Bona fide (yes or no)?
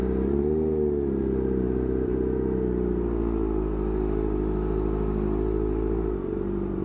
yes